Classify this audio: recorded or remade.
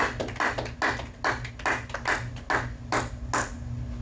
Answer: recorded